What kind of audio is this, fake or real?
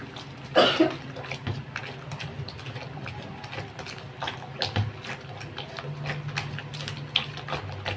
real